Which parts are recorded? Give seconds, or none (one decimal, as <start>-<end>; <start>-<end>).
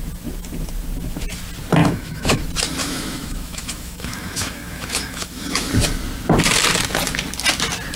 0.0-1.8; 2.4-2.8; 5.7-8.0